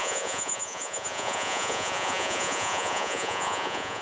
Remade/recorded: remade